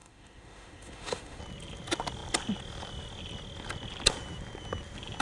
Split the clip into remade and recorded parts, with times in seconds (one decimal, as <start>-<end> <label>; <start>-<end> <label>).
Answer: 0.0-1.4 remade; 1.4-5.2 recorded